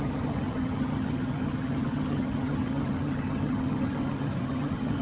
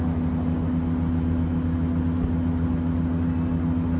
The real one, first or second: second